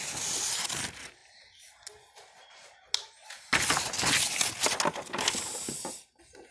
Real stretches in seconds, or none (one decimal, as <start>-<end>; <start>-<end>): 0.0-6.5

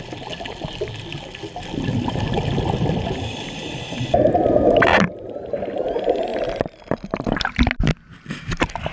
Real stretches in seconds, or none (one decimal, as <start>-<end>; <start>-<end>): 0.0-8.9

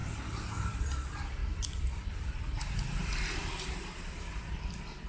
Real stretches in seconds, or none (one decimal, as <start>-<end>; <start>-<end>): 0.7-1.4; 4.5-5.1

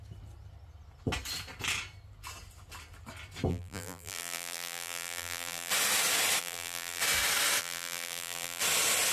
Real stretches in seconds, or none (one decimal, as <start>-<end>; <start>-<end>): 0.0-3.5; 5.7-6.4; 7.0-7.6; 8.6-9.1

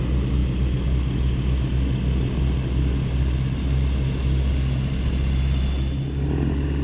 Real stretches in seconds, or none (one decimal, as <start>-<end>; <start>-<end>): 0.0-6.8

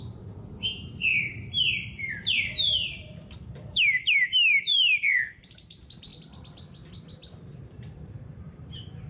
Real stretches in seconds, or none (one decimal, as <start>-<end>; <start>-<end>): 6.1-7.4

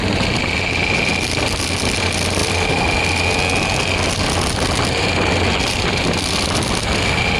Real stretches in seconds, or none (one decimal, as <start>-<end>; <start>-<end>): 0.0-7.4